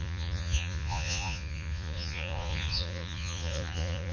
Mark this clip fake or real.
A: fake